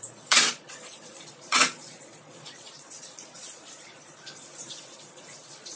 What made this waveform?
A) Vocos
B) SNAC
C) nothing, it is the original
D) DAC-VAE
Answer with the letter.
A